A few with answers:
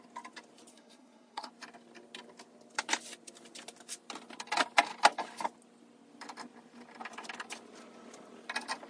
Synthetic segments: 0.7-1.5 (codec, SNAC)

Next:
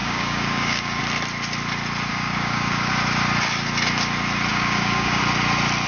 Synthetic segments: 0.0-1.0 (codec, DAC); 2.1-2.9; 4.5-5.2

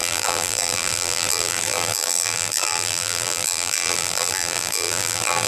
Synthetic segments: 0.0-5.5 (vocoder, BigVGAN v2)

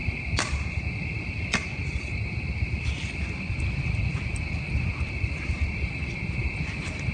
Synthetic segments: none

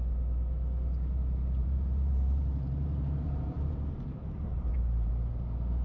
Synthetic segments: 1.6-5.1 (vocoder, BigVGAN v2)

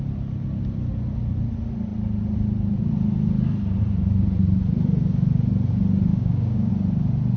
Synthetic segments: 6.1-6.7 (codec, DAC)